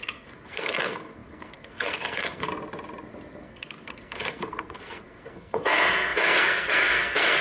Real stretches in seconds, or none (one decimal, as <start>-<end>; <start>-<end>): 2.5-3.4